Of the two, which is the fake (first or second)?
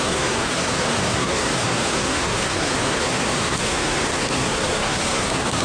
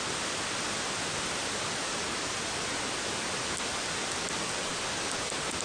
first